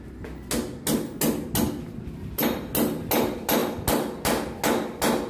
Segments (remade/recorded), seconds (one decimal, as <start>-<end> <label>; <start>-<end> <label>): 0.0-5.3 recorded